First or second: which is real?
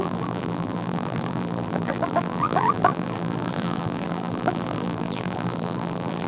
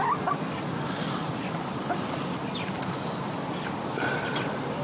second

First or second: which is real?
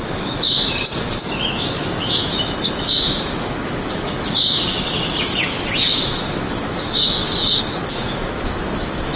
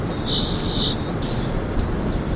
second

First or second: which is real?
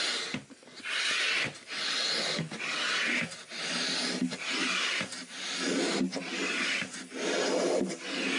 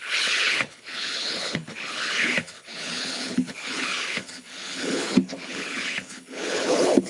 first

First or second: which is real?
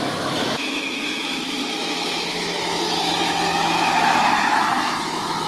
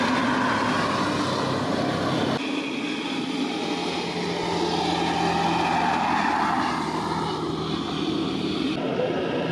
second